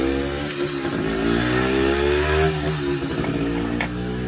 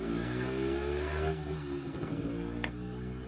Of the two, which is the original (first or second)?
first